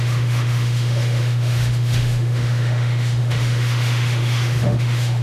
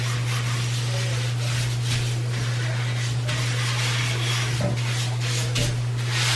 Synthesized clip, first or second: first